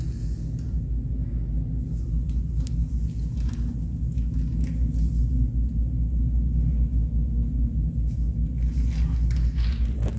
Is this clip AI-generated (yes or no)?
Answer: no